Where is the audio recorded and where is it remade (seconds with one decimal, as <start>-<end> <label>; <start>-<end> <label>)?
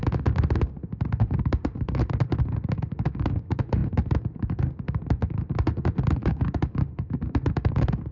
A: 0.0-8.1 remade